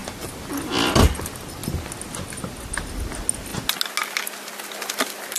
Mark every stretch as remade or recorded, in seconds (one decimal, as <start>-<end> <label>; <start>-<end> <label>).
0.0-0.5 remade; 0.5-5.4 recorded